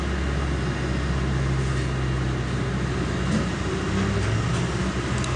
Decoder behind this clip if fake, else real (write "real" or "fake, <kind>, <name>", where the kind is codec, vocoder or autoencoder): real